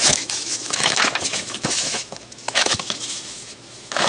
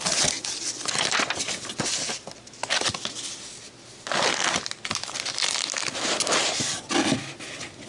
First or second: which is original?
second